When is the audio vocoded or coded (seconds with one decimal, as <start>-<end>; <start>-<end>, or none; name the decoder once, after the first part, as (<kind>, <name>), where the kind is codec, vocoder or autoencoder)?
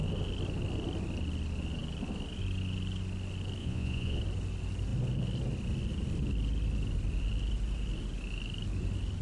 3.6-4.2 (vocoder, Vocos)